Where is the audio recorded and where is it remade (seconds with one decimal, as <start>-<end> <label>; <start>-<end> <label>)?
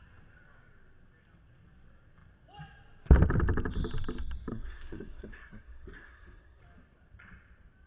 0.0-4.5 recorded; 4.5-6.6 remade; 6.6-7.9 recorded